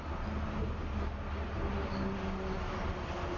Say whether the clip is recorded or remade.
recorded